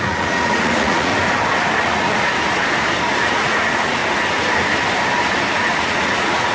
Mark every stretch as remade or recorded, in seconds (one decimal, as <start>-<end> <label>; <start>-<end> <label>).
0.0-1.1 remade; 1.1-1.8 recorded; 1.8-2.3 remade; 2.3-3.2 recorded; 3.2-4.0 remade; 4.0-5.6 recorded; 5.6-6.5 remade

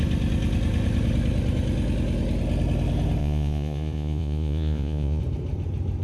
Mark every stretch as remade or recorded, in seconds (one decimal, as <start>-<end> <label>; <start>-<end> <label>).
0.0-3.2 recorded; 3.2-5.2 remade; 5.2-6.0 recorded

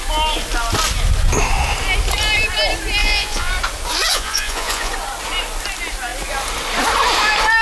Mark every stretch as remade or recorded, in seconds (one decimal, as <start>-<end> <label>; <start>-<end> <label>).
0.0-3.0 recorded; 3.0-3.5 remade; 3.5-4.1 recorded; 4.1-4.9 remade; 4.9-7.6 recorded

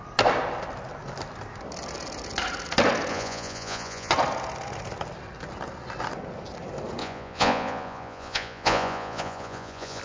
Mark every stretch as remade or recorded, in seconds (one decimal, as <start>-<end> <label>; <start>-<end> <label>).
0.0-3.1 recorded; 3.1-4.1 remade; 4.1-7.0 recorded; 7.0-10.0 remade